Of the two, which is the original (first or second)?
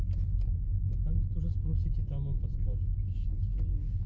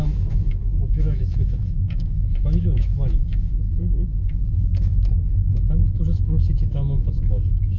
first